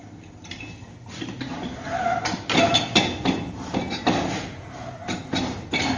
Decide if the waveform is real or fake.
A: real